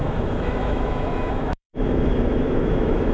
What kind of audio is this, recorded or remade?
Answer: remade